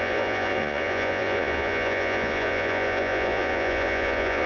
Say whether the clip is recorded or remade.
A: remade